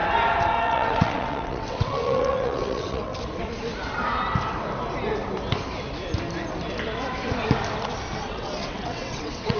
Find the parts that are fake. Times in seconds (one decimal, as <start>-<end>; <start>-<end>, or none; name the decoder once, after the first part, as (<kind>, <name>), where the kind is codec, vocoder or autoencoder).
0.6-3.1 (vocoder, WaveNeXt); 8.2-9.6